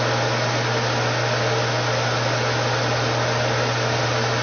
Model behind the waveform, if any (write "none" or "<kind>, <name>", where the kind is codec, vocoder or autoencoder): none